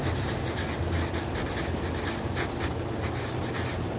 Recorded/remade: recorded